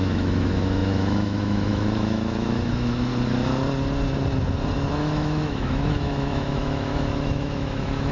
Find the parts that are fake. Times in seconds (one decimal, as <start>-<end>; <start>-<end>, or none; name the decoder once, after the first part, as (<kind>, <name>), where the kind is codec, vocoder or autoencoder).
0.0-3.1 (autoencoder, DAC-VAE); 4.9-8.1